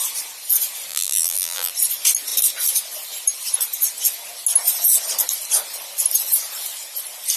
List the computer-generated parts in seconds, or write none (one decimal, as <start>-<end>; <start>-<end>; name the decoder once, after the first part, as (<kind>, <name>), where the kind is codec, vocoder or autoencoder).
0.9-1.7 (vocoder, BigVGAN v2)